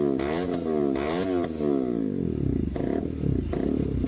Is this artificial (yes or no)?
no